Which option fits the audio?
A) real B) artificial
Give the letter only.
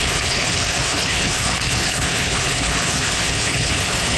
B